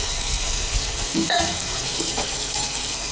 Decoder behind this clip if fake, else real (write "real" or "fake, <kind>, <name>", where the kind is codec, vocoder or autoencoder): fake, codec, SNAC